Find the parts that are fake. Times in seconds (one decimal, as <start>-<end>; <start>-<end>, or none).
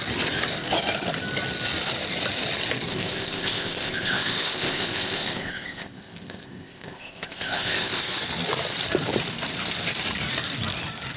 2.9-8.0